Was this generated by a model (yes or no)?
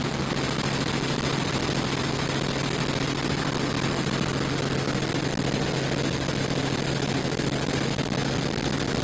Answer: no